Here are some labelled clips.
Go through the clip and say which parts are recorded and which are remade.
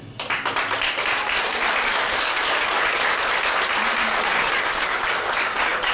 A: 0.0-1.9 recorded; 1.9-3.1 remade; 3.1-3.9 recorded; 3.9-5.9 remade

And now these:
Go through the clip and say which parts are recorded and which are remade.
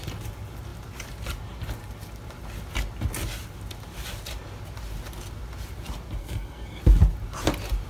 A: 0.0-6.2 recorded; 6.2-6.8 remade; 6.8-7.9 recorded